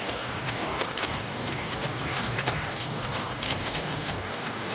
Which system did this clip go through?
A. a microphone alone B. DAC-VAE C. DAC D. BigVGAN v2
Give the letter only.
C